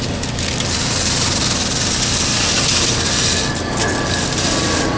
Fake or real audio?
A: real